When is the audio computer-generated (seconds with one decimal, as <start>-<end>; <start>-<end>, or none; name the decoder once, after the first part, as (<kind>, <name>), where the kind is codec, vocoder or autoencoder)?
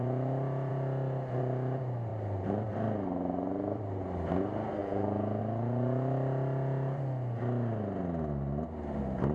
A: 4.8-5.4 (vocoder, Vocos)